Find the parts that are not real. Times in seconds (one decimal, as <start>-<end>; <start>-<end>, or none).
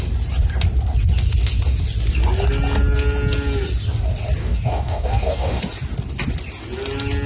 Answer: 4.4-5.6